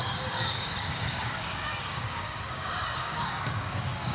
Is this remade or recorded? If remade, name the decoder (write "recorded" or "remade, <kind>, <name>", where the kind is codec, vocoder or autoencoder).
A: remade, codec, DAC